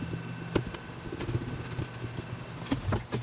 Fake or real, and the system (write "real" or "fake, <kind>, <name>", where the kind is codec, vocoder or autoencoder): real